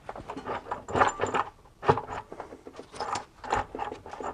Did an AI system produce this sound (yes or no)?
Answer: no